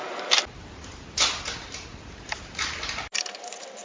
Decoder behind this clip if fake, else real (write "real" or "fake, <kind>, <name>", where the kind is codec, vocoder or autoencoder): real